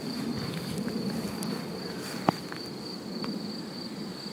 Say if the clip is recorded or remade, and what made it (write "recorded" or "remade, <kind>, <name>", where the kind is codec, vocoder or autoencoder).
recorded